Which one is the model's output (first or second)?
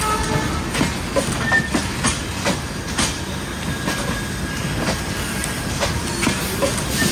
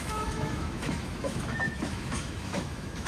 second